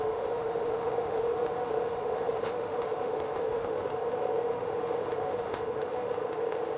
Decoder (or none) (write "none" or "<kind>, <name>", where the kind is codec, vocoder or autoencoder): autoencoder, DAC-VAE